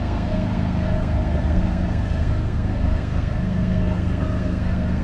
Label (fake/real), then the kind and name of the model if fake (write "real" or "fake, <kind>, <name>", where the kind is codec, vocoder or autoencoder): fake, codec, SNAC